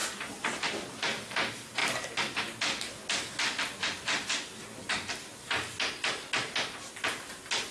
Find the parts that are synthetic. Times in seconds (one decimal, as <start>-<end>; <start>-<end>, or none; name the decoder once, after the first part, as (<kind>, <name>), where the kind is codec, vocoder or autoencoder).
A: none